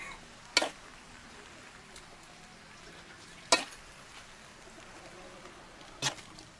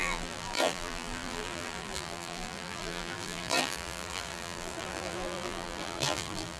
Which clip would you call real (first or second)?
first